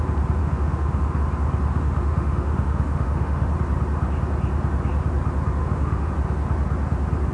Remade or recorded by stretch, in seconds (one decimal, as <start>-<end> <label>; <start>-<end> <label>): 0.0-0.4 recorded; 0.4-1.2 remade; 1.2-1.7 recorded; 1.7-3.5 remade; 3.5-5.6 recorded; 5.6-6.1 remade; 6.1-7.3 recorded